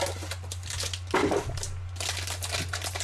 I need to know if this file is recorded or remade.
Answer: recorded